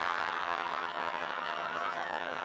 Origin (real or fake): fake